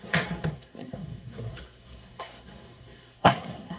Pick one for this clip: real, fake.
fake